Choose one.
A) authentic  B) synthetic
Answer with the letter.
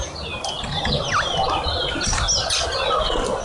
A